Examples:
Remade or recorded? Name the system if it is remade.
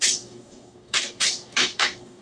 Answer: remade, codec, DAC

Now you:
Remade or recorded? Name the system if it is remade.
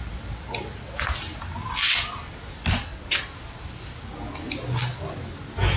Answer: recorded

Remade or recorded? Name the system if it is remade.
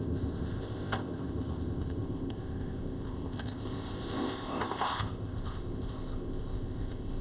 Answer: remade, codec, ZipCodec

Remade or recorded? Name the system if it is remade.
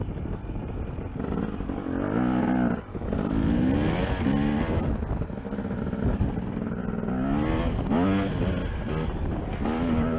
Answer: recorded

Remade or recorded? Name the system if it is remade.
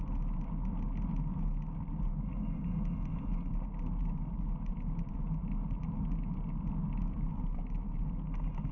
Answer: recorded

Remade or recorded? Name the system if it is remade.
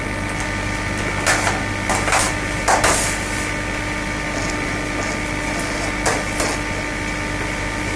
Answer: recorded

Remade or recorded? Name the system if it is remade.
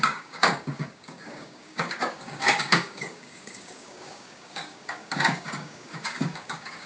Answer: remade, codec, DAC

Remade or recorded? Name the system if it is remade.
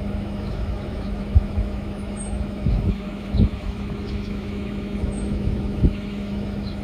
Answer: remade, autoencoder, DAC-VAE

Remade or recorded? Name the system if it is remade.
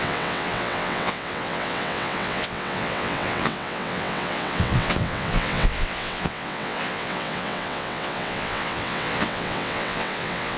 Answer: remade, vocoder, WaveNeXt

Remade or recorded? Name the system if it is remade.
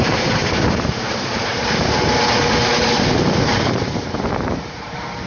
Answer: remade, vocoder, BigVGAN v2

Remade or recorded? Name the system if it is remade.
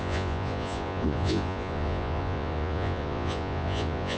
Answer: remade, vocoder, Vocos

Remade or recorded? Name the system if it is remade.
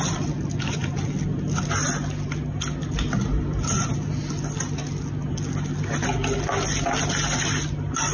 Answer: recorded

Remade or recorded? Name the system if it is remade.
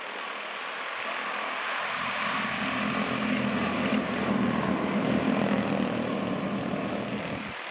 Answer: recorded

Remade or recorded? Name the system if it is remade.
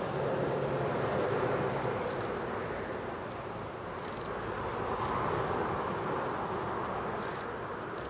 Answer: recorded